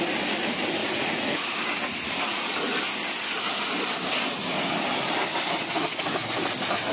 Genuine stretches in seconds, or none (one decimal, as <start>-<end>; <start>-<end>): 0.0-0.8; 1.5-6.9